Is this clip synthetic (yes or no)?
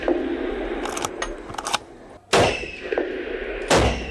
no